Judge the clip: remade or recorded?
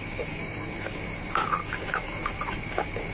remade